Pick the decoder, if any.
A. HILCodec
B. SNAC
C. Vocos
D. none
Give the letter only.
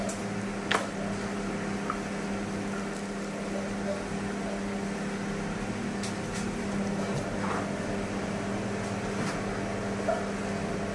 D